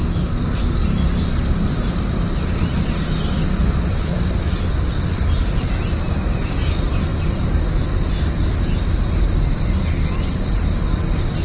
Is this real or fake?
real